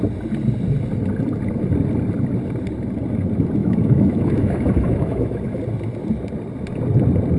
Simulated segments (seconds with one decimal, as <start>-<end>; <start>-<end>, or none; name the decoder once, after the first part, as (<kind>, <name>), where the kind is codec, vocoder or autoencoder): 3.6-5.6 (autoencoder, DAC-VAE)